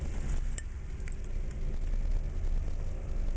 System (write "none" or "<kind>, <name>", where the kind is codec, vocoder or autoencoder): none